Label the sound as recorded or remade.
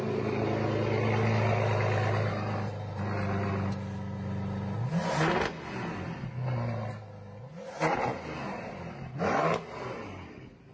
recorded